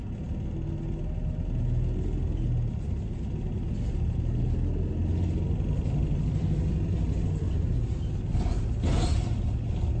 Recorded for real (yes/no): yes